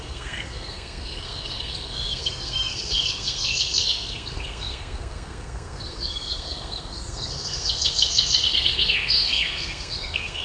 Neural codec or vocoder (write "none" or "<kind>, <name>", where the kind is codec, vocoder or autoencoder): codec, SNAC